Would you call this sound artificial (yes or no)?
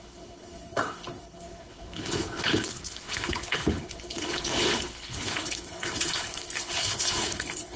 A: yes